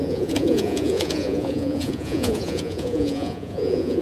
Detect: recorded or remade remade